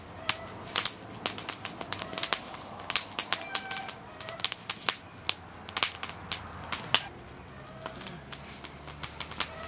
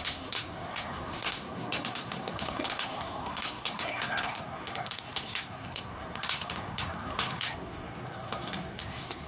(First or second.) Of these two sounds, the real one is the first